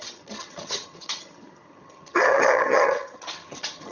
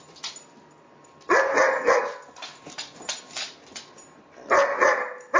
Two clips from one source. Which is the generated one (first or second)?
first